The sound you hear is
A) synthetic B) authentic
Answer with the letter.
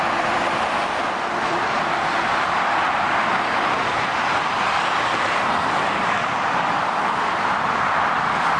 A